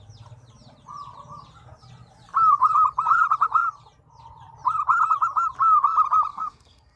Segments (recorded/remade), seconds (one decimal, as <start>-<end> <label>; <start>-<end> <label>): 0.0-6.3 recorded; 6.3-7.0 remade